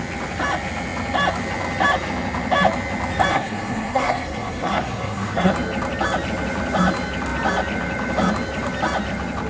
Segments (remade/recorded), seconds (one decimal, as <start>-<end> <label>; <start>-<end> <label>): 0.0-3.3 recorded; 3.3-5.5 remade; 5.5-9.5 recorded